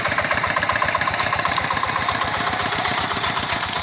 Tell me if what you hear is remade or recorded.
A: remade